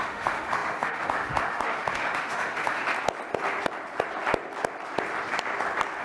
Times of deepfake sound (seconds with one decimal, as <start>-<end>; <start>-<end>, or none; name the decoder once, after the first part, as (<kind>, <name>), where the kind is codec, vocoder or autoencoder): 0.0-2.8 (autoencoder, DAC-VAE)